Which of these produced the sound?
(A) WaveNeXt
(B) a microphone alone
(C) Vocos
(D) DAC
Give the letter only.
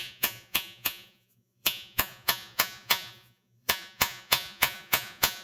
C